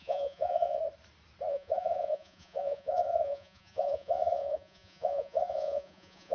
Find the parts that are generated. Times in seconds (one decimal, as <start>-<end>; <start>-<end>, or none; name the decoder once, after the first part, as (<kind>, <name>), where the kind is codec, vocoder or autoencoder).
0.0-0.8 (vocoder, Vocos); 1.5-6.3